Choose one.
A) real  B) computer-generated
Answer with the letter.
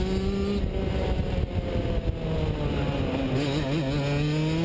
A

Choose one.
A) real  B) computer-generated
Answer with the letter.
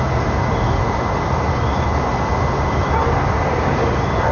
A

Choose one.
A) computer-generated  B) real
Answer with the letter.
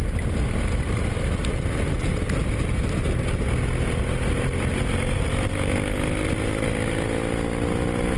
B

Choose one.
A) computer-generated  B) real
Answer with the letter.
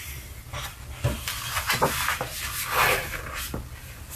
B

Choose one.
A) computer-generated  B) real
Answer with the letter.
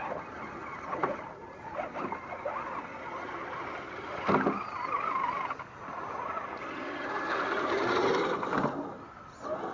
B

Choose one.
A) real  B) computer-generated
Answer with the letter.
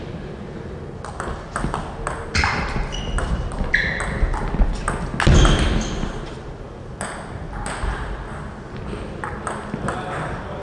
A